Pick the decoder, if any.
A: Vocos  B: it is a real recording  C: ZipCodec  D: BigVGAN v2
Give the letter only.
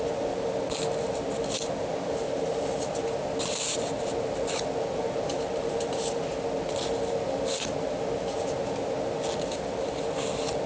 B